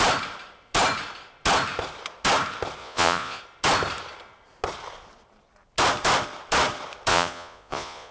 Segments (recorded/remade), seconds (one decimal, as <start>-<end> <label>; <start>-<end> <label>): 0.0-2.8 recorded; 2.8-3.4 remade; 3.4-7.1 recorded; 7.1-8.1 remade